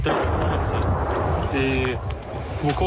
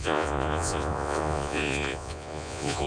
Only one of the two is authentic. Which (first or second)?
first